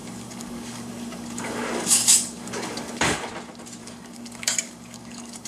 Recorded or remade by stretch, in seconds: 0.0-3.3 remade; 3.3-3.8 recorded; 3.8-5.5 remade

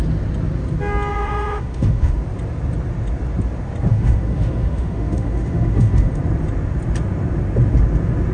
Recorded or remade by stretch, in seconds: 0.0-1.1 recorded; 1.1-2.2 remade; 2.2-3.9 recorded; 3.9-6.2 remade; 6.2-8.3 recorded

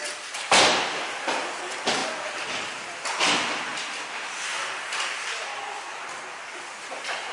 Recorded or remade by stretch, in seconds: 0.0-7.3 recorded

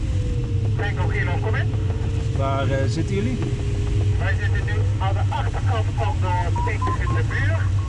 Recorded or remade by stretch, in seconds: 0.0-7.9 recorded

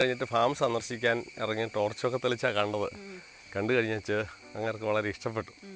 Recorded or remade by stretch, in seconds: 0.0-5.8 recorded